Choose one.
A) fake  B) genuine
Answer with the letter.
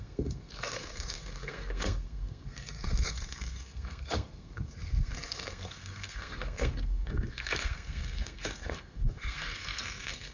A